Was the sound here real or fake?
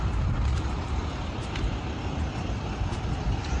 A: real